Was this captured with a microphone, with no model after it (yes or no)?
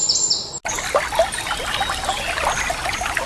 yes